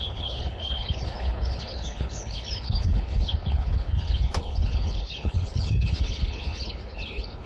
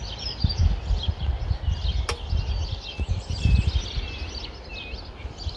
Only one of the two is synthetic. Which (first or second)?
first